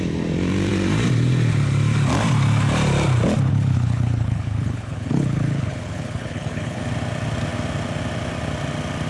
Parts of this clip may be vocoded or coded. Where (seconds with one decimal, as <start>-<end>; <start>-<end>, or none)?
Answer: 3.5-6.8